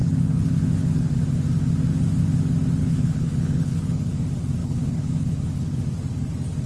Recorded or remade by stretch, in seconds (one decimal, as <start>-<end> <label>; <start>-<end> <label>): 0.0-1.0 remade; 1.0-2.8 recorded; 2.8-4.1 remade; 4.1-4.6 recorded; 4.6-5.8 remade; 5.8-6.7 recorded